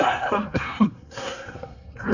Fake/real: fake